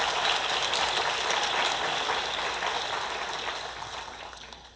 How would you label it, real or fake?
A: real